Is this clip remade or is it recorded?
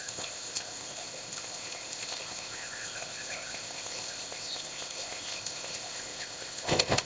remade